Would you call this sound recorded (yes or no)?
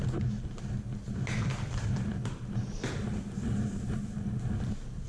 yes